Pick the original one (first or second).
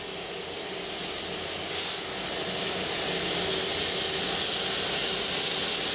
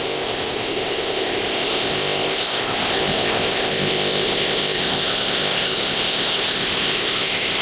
first